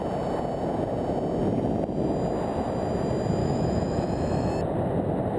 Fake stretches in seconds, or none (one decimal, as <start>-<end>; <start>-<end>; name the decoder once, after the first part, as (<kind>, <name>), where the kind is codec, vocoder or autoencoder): 3.4-4.5 (autoencoder, DAC-VAE)